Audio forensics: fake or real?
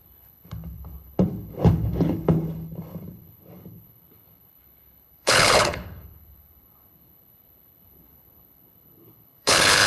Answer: fake